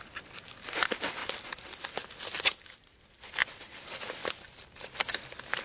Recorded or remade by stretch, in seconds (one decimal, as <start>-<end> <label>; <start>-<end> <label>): 0.0-5.6 recorded